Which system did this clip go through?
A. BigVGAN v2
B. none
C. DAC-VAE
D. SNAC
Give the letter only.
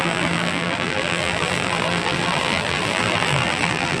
A